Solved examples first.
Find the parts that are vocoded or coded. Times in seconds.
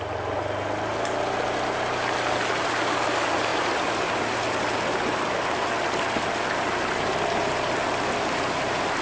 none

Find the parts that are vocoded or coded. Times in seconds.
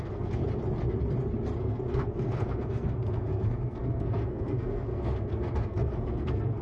0.0-0.4 (codec, SNAC); 1.6-6.6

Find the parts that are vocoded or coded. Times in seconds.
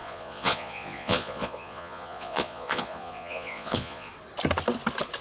0.0-4.1 (vocoder, Vocos)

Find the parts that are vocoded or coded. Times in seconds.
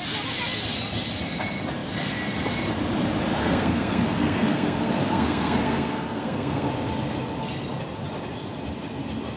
3.4-6.7 (codec, SNAC)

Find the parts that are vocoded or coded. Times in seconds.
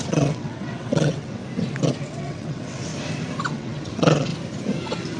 0.0-1.4 (vocoder, WaveNeXt); 2.0-2.9; 3.5-4.3